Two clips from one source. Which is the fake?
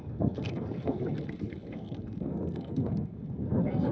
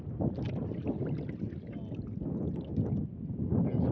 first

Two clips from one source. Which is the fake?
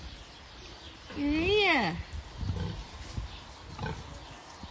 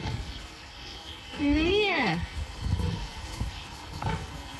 second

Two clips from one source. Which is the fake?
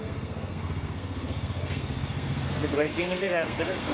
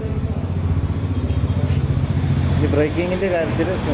first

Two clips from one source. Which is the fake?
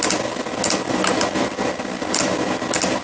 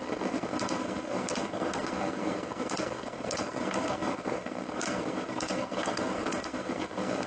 second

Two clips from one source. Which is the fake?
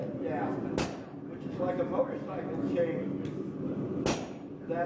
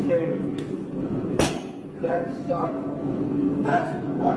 second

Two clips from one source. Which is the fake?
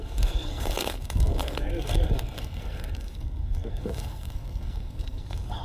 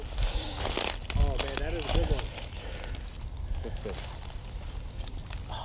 first